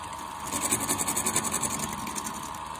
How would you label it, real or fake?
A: real